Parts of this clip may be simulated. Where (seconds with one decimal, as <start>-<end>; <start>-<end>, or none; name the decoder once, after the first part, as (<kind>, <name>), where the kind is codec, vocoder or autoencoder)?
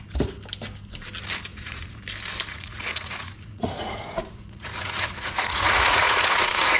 1.5-2.0 (vocoder, Vocos); 2.5-6.8